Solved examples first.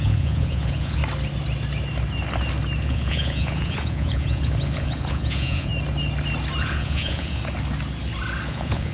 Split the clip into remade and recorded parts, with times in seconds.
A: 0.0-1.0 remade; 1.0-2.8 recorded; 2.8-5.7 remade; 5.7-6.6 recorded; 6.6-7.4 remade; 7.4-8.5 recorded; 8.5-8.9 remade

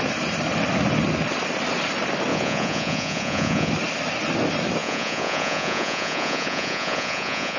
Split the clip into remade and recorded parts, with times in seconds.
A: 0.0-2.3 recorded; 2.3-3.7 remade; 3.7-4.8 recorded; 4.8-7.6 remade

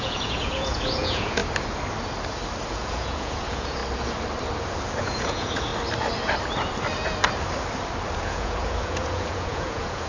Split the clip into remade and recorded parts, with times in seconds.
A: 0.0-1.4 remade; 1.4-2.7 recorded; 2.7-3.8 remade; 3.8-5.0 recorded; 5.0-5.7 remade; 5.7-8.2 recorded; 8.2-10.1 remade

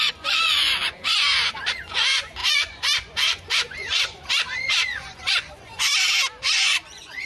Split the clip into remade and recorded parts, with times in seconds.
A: 0.0-5.9 remade; 5.9-6.4 recorded; 6.4-7.3 remade

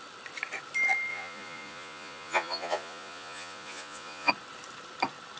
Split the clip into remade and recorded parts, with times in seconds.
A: 0.0-1.1 recorded; 1.1-4.3 remade; 4.3-5.4 recorded

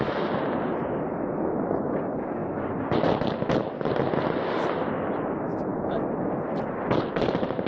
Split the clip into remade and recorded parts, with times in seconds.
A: 0.0-7.7 recorded